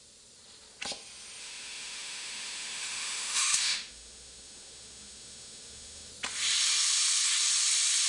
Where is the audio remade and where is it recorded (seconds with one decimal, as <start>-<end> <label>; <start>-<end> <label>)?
0.0-1.4 recorded; 1.4-6.1 remade; 6.1-8.1 recorded